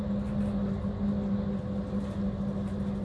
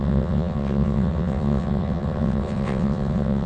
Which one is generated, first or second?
second